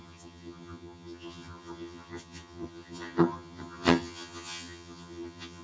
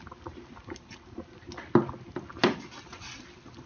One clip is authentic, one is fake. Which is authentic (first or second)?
second